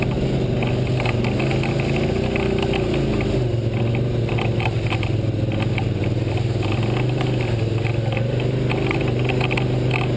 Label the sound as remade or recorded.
recorded